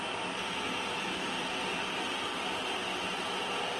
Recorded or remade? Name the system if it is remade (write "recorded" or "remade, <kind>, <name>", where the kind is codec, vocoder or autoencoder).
recorded